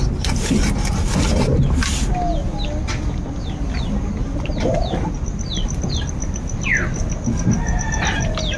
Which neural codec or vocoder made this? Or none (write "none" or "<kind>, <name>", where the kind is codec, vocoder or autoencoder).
none